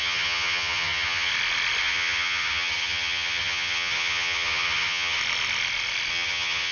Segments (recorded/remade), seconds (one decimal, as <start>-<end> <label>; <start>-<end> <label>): 0.0-1.3 remade; 1.3-1.8 recorded; 1.8-5.2 remade; 5.2-6.1 recorded; 6.1-6.7 remade